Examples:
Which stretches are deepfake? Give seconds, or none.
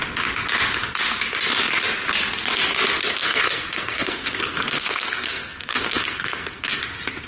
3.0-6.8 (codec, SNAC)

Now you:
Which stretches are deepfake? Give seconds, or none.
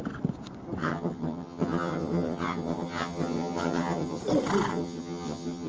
0.8-4.2 (vocoder, HiFi-GAN); 4.7-5.7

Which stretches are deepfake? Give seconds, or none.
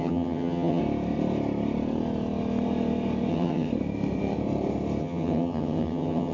0.0-0.8 (vocoder, HiFi-GAN); 3.3-3.7; 5.0-6.3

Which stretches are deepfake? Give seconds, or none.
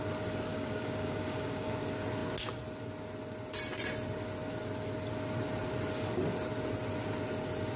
0.5-1.8 (codec, DAC)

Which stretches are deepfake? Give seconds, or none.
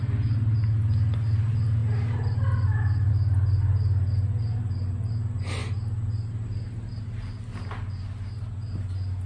none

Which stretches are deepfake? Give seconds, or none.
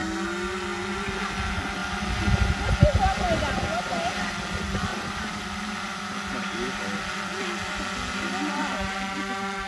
4.9-7.0 (vocoder, BigVGAN v2)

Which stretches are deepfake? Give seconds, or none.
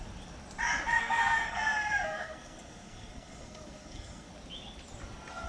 1.0-4.3 (codec, SNAC)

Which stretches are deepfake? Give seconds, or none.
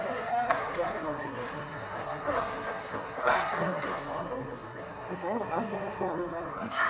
0.0-6.9 (codec, SNAC)